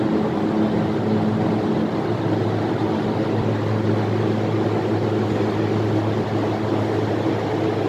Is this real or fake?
real